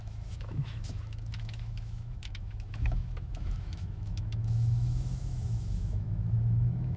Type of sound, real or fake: fake